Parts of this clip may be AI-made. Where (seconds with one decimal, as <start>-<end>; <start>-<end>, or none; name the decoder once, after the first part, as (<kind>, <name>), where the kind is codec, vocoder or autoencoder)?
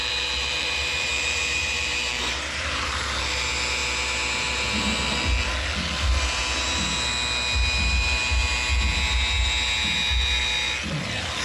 0.0-3.2 (vocoder, BigVGAN v2)